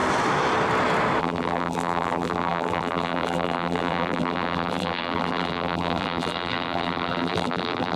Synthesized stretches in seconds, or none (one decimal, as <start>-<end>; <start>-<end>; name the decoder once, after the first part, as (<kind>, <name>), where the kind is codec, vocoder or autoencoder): 1.2-8.0 (vocoder, BigVGAN v2)